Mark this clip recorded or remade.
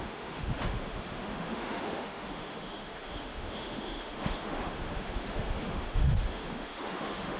remade